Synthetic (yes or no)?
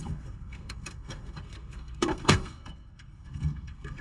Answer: yes